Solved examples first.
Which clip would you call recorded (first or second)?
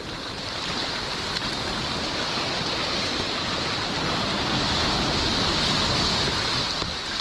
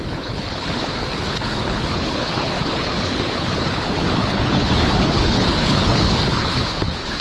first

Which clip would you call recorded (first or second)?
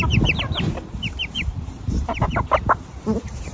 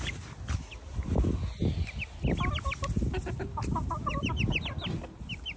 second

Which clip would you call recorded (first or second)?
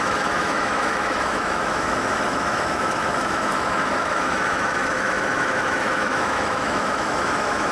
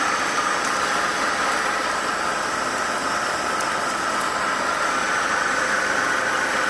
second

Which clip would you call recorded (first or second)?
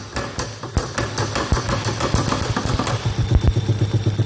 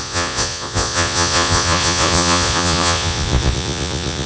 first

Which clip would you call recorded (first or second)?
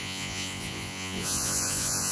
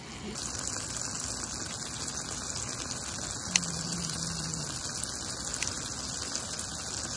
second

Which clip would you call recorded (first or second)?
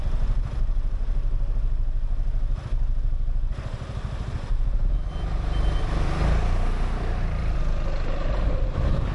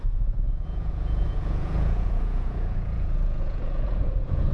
first